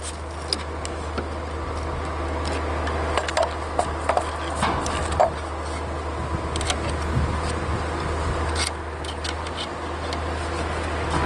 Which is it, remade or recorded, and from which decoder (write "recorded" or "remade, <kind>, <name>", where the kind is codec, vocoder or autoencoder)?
recorded